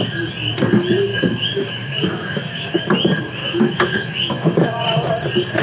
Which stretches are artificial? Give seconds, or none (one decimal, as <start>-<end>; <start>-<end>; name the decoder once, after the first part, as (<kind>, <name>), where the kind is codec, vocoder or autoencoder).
1.1-2.8 (autoencoder, DAC-VAE); 3.4-5.1

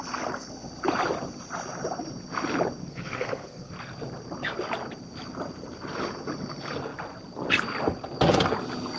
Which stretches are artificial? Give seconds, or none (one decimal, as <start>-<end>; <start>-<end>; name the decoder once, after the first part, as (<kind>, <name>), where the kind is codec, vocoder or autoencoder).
2.9-3.7 (codec, SNAC)